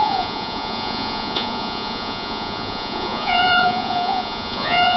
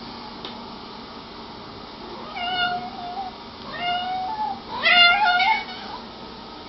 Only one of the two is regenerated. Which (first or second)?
first